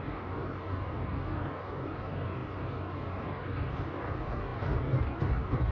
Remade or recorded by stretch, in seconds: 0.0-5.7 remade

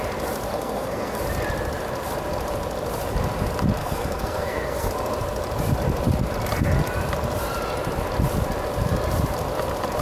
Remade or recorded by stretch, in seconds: 0.0-0.5 recorded; 0.5-1.2 remade; 1.2-3.8 recorded; 3.8-4.9 remade; 4.9-10.0 recorded